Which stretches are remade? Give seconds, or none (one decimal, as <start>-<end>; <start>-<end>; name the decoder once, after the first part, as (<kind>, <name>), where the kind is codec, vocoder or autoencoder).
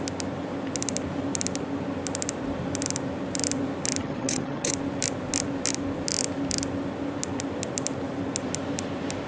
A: 4.0-4.7 (vocoder, HiFi-GAN)